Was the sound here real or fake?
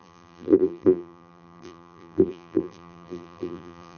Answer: fake